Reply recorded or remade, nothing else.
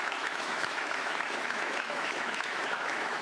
remade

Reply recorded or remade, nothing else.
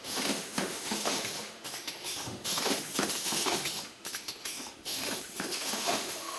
remade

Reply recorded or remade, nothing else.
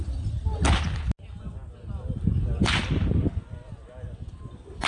recorded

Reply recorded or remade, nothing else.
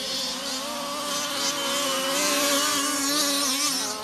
recorded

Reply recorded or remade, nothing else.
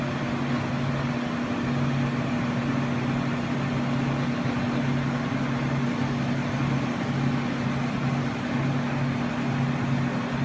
recorded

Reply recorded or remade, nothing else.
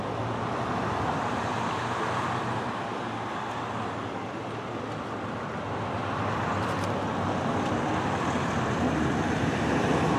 recorded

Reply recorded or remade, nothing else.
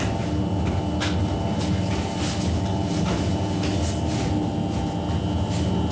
recorded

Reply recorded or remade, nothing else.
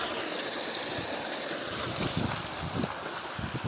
recorded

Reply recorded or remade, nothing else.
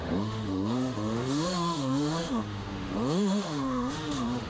remade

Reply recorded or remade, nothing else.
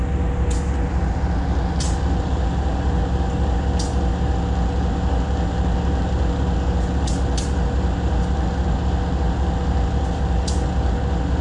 recorded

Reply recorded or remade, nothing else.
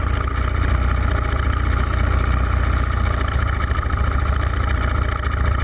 recorded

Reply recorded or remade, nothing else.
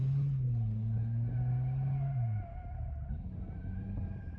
recorded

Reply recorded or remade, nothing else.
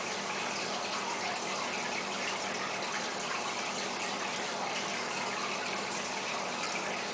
recorded